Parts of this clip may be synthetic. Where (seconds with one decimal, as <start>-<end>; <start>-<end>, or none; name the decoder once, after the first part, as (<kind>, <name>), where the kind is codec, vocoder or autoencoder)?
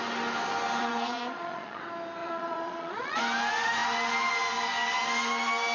0.8-1.8 (vocoder, Vocos); 2.2-3.2